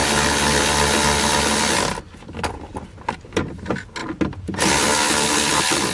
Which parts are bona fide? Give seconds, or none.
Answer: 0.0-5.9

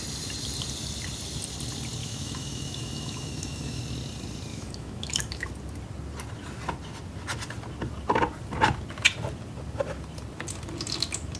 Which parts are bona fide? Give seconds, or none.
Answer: 0.0-2.0; 3.8-4.5; 5.5-11.4